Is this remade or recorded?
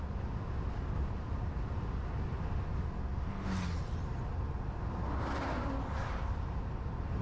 recorded